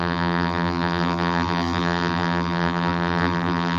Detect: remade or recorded remade